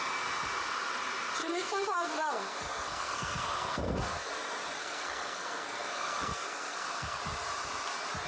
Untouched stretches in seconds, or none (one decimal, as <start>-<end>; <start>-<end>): 0.0-1.4; 4.3-4.8; 7.2-8.3